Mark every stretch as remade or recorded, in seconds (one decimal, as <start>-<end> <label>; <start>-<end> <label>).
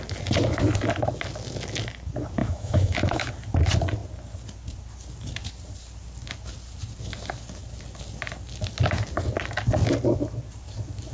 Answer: 0.0-2.4 recorded; 2.4-3.3 remade; 3.3-11.1 recorded